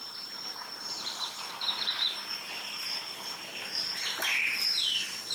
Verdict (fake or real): fake